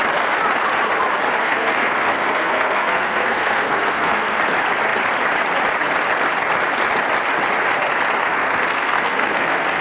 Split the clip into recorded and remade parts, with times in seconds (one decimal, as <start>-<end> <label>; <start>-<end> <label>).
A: 0.0-1.4 recorded; 1.4-4.4 remade; 4.4-8.2 recorded; 8.2-9.8 remade